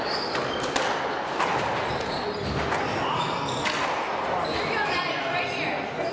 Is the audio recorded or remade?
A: recorded